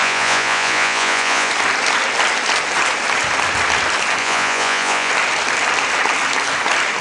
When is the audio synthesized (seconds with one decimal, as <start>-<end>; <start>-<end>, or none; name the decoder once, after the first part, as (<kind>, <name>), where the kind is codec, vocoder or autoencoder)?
0.0-1.5 (vocoder, Vocos); 4.2-5.1